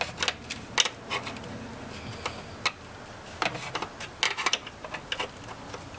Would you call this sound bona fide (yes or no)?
yes